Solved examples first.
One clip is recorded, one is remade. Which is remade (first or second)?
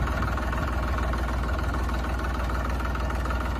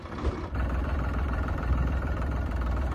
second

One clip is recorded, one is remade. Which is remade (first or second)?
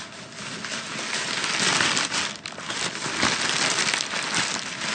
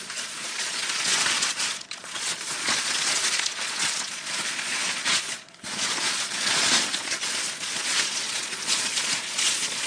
second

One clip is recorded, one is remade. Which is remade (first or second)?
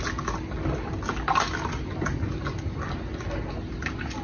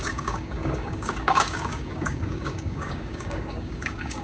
second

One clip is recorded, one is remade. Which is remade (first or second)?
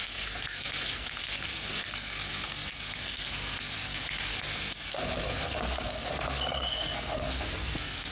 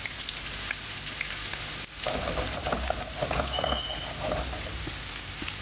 first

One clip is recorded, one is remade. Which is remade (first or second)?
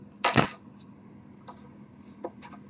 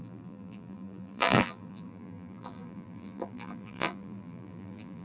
second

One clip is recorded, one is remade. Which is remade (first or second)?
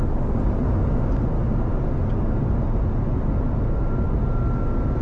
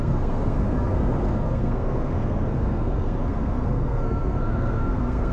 second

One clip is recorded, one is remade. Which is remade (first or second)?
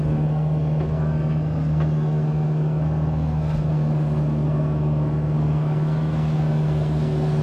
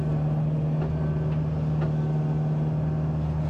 first